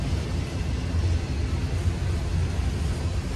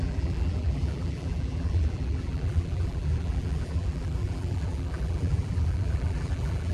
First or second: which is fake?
second